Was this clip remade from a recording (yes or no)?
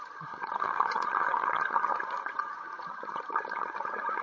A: yes